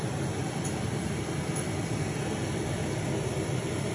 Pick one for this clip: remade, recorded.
remade